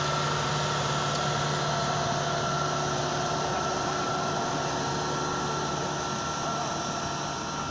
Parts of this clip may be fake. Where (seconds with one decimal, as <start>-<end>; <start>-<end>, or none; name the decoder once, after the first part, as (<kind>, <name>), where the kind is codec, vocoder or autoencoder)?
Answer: 3.1-4.9 (vocoder, BigVGAN v2)